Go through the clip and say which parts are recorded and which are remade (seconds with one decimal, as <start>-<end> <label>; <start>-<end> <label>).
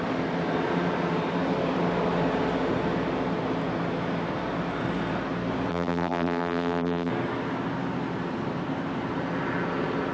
0.0-5.7 recorded; 5.7-7.1 remade; 7.1-10.1 recorded